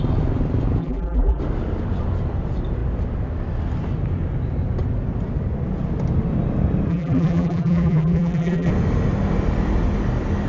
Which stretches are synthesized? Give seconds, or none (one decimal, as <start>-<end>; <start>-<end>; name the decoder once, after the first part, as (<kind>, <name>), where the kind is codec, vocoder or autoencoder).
0.8-1.4 (vocoder, BigVGAN v2); 6.9-8.7